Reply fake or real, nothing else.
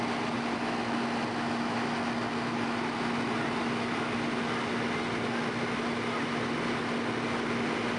real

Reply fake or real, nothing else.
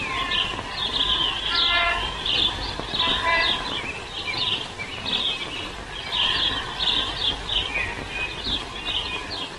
real